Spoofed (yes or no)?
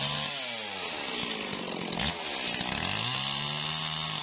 no